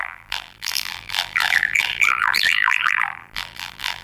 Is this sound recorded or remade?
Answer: remade